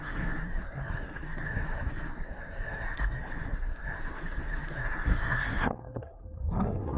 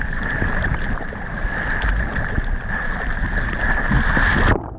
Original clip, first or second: second